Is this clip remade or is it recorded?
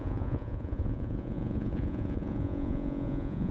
remade